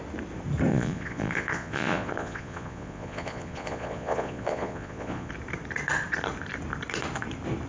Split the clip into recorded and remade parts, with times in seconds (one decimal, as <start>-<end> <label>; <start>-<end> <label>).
0.0-0.7 recorded; 0.7-5.3 remade; 5.3-7.7 recorded